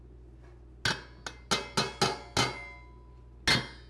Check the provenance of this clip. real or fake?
real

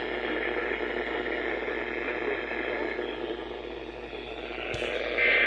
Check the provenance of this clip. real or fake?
real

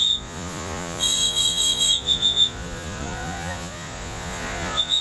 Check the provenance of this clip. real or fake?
fake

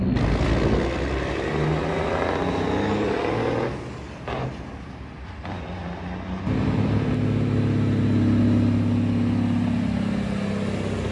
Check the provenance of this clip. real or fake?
real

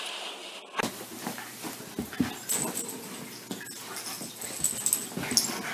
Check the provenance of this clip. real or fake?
real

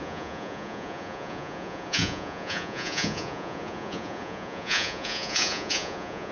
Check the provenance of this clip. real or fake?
fake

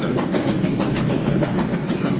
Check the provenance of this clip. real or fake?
fake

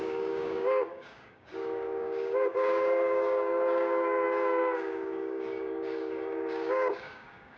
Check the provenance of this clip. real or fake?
fake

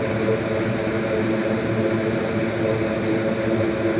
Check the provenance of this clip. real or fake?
real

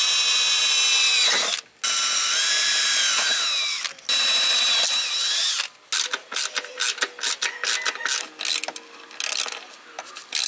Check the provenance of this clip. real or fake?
real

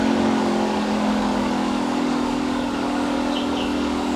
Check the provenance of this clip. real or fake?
fake